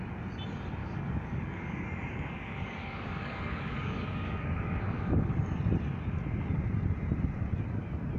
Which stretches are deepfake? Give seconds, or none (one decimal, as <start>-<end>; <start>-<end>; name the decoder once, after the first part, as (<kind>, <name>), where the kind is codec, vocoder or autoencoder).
0.8-5.3 (codec, DAC)